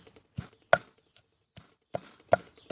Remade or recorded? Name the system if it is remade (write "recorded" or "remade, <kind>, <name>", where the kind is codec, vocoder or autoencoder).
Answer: recorded